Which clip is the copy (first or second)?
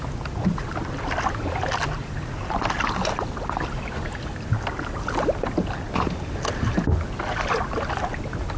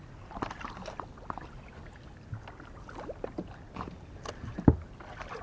second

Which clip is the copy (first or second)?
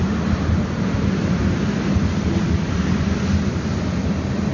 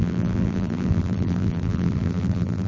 second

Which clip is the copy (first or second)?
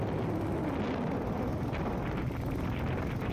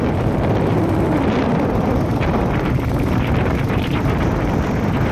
second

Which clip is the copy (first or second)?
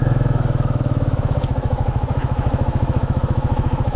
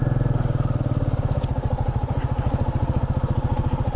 first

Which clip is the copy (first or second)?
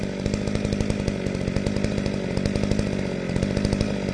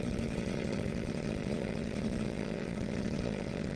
second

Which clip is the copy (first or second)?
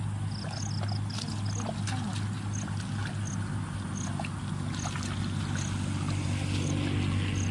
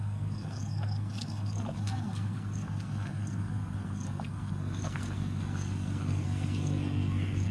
second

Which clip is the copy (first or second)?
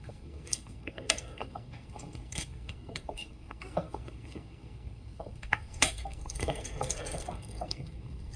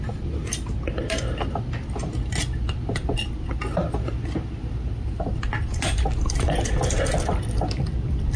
first